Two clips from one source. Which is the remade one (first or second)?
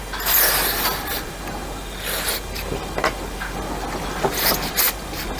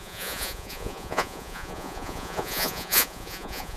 second